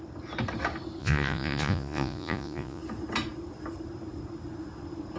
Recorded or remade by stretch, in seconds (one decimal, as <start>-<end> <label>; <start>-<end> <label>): 0.0-1.0 recorded; 1.0-2.8 remade; 2.8-5.2 recorded